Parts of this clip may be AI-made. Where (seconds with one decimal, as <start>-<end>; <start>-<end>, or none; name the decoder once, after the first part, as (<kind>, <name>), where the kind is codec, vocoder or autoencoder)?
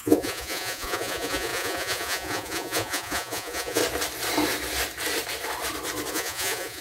0.0-3.8 (vocoder, Vocos); 6.1-6.8